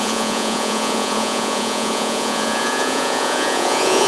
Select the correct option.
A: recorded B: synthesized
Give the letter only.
B